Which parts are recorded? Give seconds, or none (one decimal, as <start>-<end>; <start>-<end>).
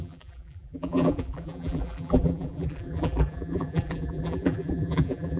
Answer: none